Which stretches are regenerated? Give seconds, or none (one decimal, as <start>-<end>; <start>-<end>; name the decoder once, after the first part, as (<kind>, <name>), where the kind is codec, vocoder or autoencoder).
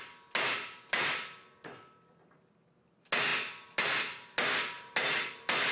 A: none